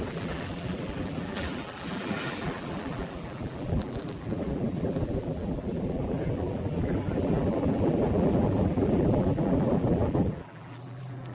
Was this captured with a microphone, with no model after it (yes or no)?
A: no